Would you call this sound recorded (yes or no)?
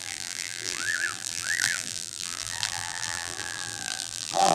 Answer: no